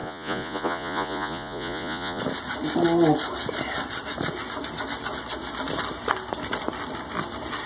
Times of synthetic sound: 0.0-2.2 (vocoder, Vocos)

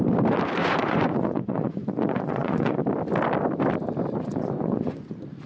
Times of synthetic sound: 0.6-2.8 (vocoder, Vocos); 4.3-5.1

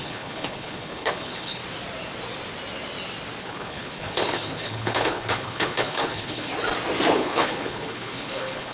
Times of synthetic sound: 0.0-1.6 (codec, HILCodec); 3.4-6.5; 7.1-8.7

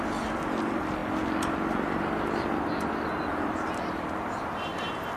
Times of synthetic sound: none

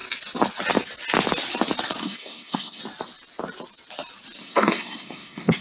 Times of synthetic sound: 2.0-2.8 (codec, SNAC); 4.4-5.6

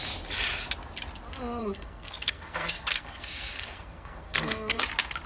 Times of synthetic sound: 1.6-4.8 (codec, SNAC)